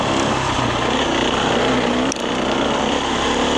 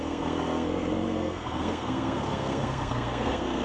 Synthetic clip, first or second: second